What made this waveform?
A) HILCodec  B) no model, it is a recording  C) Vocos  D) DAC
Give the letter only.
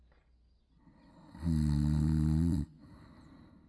B